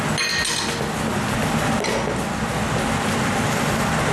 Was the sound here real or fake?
real